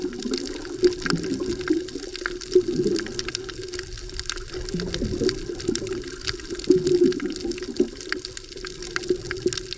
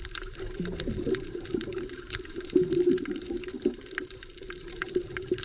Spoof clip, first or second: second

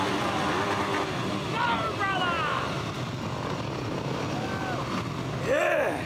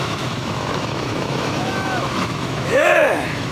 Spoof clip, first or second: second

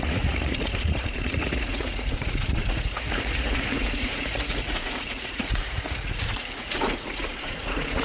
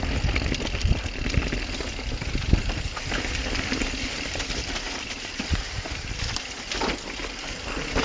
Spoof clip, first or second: first